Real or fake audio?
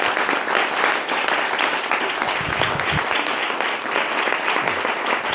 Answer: real